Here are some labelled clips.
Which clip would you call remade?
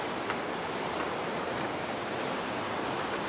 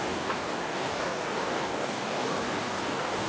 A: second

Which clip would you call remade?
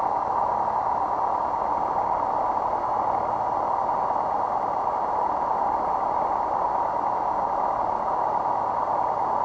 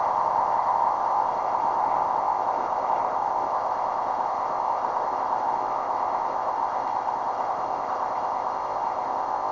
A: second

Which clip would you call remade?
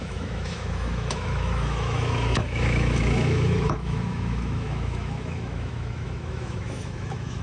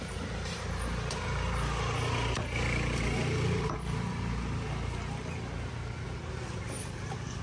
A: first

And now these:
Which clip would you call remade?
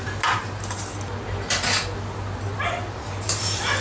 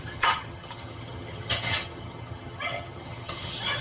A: second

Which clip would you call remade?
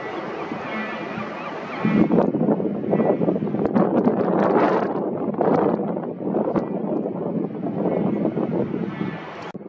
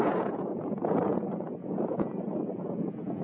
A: second